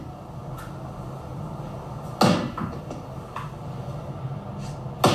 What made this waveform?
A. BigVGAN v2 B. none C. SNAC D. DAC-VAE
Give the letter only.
B